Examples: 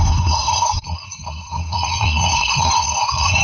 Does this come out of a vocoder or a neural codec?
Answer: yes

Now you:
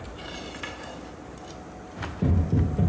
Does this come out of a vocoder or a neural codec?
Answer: no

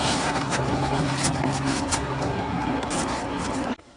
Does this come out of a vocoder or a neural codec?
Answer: yes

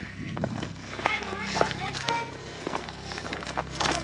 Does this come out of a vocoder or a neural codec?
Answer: yes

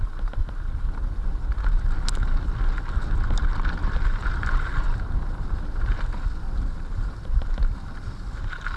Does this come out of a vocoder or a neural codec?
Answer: no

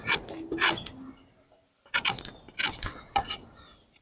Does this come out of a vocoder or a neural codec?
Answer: no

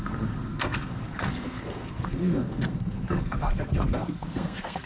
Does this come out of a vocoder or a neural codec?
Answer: yes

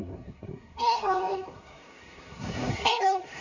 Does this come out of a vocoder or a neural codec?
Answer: yes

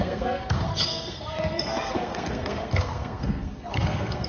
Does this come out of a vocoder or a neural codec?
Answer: yes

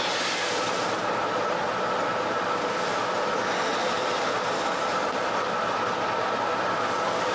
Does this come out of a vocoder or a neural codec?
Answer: no